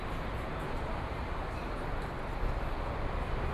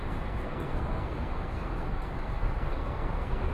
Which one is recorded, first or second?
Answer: first